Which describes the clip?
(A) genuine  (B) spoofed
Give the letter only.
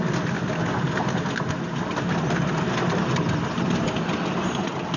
A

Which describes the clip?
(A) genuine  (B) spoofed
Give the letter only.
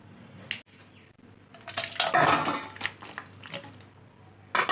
A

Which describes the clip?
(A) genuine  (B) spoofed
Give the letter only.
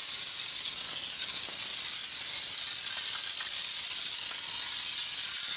A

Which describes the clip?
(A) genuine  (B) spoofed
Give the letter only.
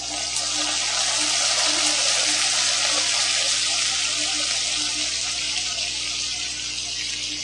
A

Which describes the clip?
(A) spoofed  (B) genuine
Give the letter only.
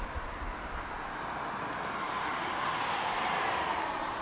B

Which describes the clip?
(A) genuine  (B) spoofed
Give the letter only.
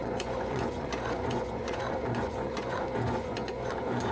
B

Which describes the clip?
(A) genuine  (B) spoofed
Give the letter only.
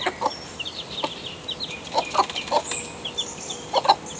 A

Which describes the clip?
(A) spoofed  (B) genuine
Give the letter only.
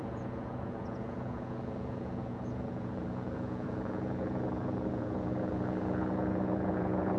A